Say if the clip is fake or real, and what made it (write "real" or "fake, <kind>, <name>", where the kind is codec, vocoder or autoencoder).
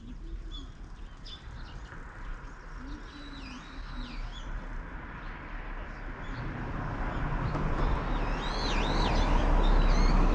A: real